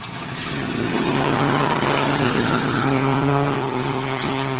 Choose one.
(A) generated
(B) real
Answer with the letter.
A